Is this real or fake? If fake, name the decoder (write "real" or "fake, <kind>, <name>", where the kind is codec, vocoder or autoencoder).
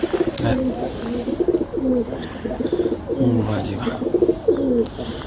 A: real